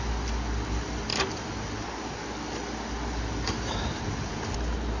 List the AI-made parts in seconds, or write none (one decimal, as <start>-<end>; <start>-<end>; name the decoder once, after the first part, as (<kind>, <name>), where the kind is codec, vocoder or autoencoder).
none